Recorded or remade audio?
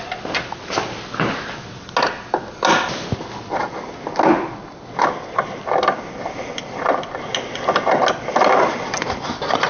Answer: recorded